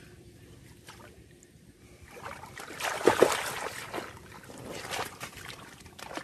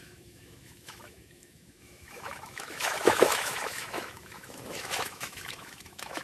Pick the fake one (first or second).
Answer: second